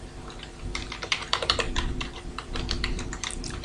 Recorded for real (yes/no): no